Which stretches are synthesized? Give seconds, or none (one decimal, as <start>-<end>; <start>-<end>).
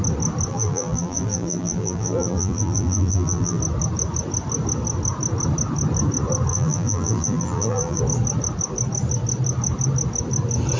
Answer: 0.5-3.6; 6.5-8.0